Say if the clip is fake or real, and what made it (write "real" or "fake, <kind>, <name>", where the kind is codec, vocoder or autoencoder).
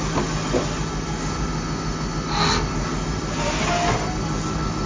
real